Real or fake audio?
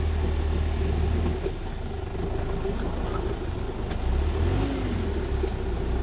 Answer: real